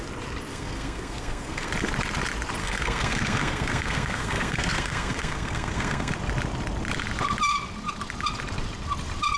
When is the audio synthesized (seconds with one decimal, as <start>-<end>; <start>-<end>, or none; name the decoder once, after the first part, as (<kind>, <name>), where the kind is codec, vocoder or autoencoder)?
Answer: 0.5-1.7 (codec, SNAC); 2.6-6.1